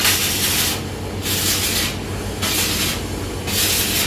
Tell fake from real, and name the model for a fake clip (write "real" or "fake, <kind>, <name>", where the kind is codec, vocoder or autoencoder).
real